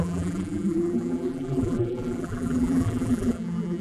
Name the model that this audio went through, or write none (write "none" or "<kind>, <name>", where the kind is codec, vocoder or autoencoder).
vocoder, BigVGAN v2